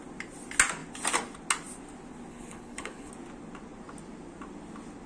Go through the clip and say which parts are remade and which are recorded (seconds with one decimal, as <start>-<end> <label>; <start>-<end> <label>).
0.0-2.3 recorded; 2.3-3.1 remade; 3.1-5.1 recorded